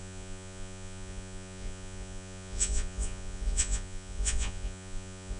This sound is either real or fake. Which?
fake